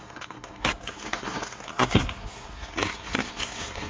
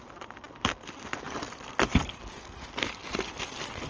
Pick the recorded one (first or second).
second